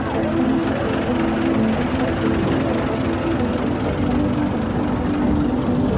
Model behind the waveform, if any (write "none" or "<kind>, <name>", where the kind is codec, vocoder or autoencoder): none